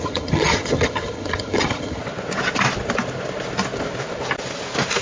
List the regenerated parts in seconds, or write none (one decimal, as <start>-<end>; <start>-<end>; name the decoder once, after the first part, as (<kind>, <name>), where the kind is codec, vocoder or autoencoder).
0.0-2.0 (vocoder, HiFi-GAN)